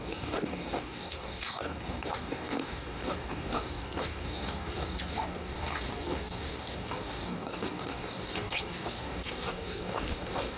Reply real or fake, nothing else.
fake